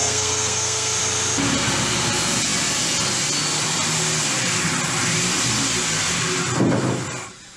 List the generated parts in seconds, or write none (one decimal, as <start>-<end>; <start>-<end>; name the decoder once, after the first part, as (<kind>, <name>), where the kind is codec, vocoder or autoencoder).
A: 0.0-1.0 (codec, SNAC)